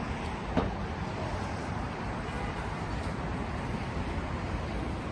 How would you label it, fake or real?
fake